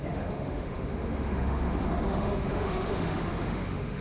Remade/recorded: remade